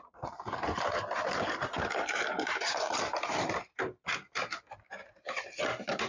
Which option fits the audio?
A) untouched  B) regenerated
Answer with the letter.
B